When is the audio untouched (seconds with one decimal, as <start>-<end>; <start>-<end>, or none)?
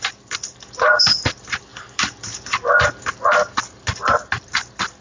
0.0-5.0